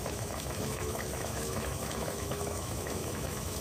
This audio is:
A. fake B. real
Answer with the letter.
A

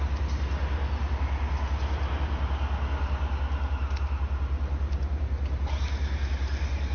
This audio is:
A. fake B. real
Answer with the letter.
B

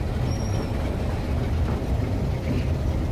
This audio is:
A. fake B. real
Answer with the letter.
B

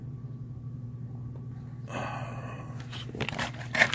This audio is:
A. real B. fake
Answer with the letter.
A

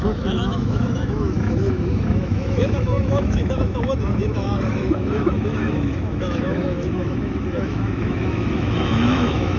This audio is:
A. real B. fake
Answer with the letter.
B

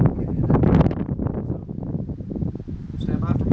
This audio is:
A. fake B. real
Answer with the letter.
B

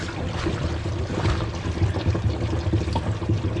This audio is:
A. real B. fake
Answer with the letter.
A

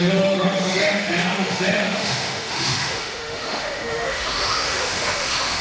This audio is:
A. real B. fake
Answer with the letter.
B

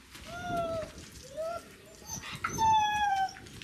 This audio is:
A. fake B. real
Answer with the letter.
B